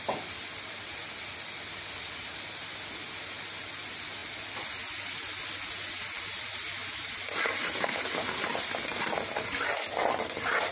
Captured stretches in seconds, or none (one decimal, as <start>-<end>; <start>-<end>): 0.0-10.7